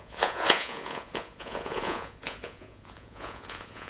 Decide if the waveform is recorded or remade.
remade